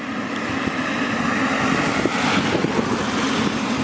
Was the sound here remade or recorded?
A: recorded